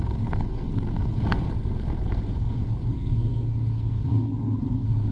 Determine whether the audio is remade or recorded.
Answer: remade